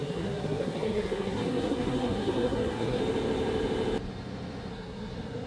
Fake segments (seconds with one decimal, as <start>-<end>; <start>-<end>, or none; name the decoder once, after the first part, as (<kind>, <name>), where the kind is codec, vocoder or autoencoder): 0.0-3.0 (codec, SNAC); 4.7-5.5